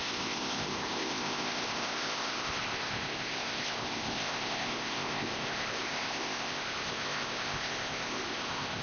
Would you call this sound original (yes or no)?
no